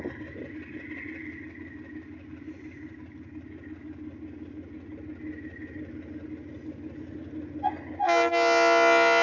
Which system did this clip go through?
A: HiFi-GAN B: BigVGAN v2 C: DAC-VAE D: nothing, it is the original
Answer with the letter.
D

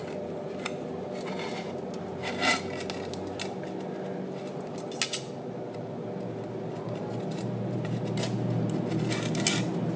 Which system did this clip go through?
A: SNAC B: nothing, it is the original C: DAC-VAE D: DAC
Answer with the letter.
B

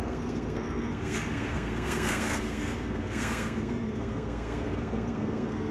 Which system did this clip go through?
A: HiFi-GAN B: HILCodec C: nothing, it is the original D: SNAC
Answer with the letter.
D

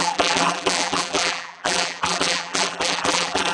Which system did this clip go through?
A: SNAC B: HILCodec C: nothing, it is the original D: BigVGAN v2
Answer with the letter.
D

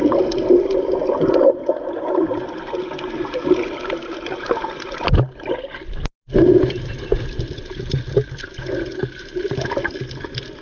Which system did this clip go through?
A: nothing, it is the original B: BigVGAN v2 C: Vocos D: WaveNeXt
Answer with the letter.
A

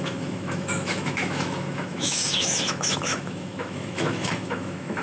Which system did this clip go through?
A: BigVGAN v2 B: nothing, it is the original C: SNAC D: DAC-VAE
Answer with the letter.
D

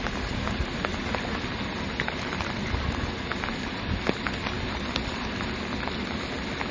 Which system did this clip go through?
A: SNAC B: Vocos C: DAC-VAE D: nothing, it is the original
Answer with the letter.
D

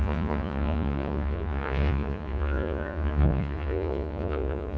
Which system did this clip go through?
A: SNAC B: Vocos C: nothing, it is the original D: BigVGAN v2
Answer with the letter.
B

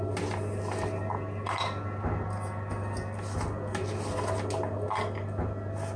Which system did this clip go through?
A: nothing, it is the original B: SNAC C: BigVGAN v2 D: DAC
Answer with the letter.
A